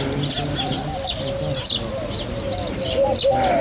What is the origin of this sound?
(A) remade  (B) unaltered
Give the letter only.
B